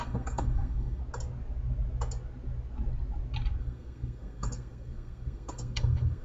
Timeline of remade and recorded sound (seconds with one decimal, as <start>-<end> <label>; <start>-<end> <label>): 0.0-1.0 remade; 1.0-3.6 recorded; 3.6-6.2 remade